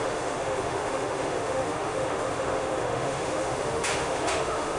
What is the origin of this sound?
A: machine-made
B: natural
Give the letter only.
A